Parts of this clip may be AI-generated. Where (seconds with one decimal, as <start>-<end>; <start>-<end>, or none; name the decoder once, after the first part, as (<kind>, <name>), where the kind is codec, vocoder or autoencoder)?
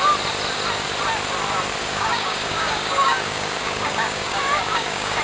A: 1.8-5.2 (codec, DAC)